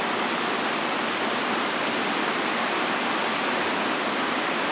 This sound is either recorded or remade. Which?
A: recorded